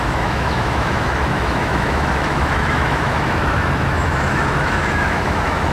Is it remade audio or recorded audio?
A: remade